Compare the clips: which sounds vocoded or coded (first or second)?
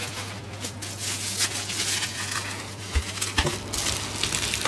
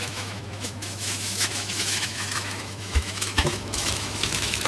second